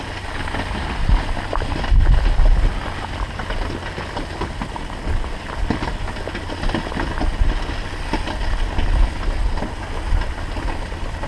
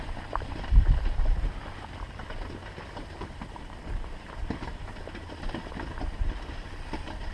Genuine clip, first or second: first